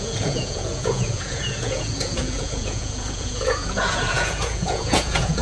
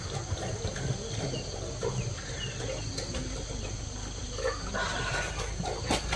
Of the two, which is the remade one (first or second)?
first